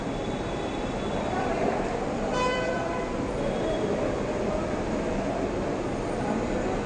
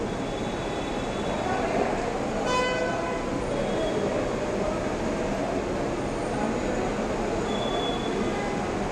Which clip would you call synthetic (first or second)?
first